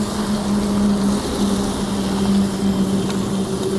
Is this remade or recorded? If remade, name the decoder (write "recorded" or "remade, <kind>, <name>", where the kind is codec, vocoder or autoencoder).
recorded